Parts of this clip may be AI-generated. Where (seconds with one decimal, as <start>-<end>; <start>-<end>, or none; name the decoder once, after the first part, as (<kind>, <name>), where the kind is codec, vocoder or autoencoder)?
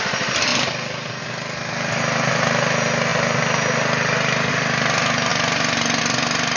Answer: none